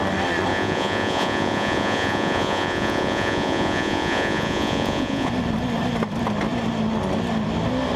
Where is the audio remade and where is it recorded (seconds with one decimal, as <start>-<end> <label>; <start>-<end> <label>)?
0.0-0.5 recorded; 0.5-5.3 remade; 5.3-8.0 recorded